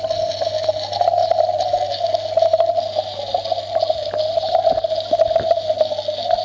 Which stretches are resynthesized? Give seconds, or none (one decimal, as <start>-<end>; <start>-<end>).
none